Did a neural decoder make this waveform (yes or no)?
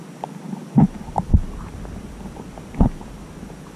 no